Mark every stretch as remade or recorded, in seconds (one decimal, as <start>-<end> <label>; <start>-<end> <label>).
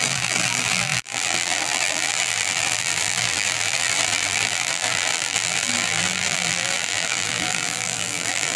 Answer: 0.0-8.6 remade